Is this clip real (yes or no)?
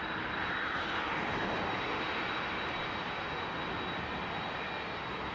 yes